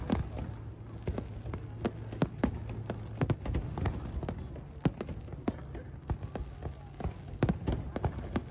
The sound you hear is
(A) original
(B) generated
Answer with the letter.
A